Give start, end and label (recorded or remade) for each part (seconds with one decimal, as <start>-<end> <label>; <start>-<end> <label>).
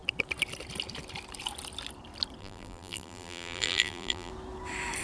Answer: 0.0-2.4 recorded; 2.4-4.3 remade; 4.3-5.0 recorded